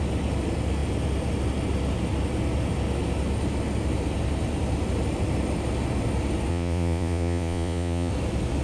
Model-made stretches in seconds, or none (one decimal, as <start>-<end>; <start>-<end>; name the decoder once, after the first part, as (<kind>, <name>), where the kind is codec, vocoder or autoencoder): 6.5-8.1 (vocoder, Vocos)